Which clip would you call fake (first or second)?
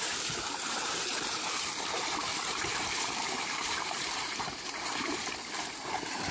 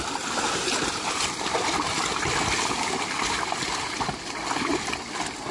first